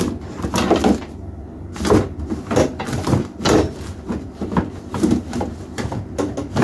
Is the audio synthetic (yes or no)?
no